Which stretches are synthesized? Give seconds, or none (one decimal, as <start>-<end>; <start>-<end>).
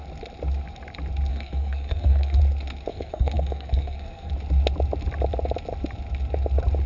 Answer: 1.3-2.4; 2.9-4.3